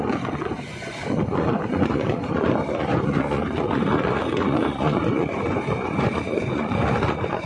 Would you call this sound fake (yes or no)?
yes